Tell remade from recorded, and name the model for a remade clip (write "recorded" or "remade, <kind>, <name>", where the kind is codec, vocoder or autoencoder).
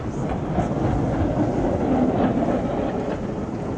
recorded